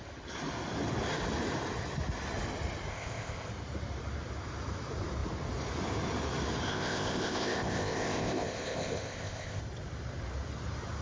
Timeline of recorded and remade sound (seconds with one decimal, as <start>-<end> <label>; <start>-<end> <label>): 0.0-2.9 recorded; 2.9-3.5 remade; 3.5-6.7 recorded; 6.7-9.6 remade; 9.6-11.0 recorded